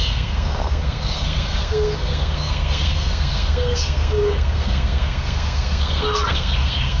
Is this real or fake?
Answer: fake